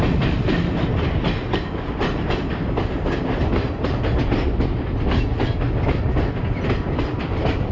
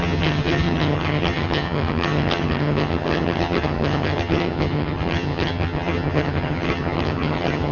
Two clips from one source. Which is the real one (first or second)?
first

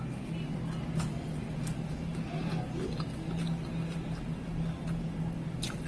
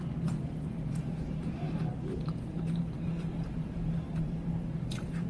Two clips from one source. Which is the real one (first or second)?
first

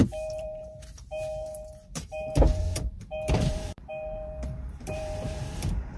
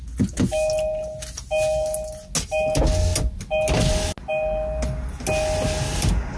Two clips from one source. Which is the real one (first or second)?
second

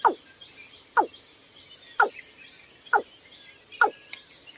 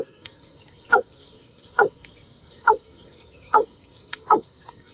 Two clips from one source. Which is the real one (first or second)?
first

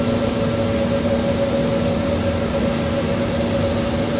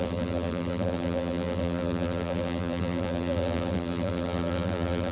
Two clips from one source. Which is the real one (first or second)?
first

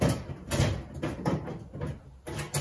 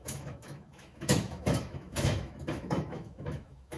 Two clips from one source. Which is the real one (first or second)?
first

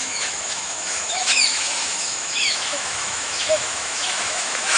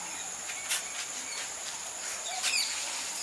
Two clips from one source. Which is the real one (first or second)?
second